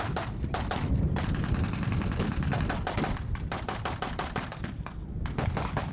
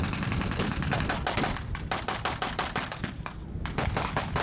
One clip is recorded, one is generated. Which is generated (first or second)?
first